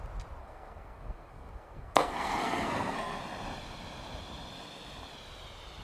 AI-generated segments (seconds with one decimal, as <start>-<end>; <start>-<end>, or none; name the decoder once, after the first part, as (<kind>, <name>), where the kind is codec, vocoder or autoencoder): 0.4-3.2 (codec, SNAC)